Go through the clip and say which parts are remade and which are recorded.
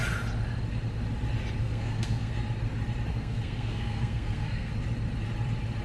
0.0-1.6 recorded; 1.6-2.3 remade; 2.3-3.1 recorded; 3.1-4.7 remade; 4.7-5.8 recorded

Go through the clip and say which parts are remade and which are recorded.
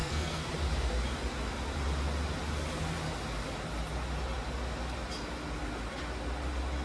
0.0-0.5 remade; 0.5-6.8 recorded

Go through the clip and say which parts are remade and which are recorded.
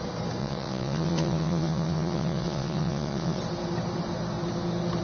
0.0-0.4 recorded; 0.4-3.4 remade; 3.4-5.0 recorded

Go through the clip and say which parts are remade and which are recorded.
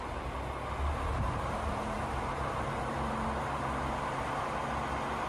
0.0-1.1 recorded; 1.1-4.3 remade; 4.3-5.3 recorded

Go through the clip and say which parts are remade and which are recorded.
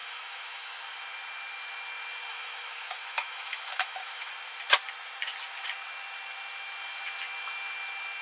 0.0-0.8 remade; 0.8-2.3 recorded; 2.3-4.3 remade; 4.3-8.2 recorded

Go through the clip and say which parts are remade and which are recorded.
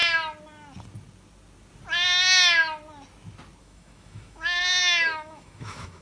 0.0-3.6 recorded; 3.6-6.0 remade